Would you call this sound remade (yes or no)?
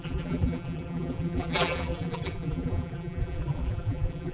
yes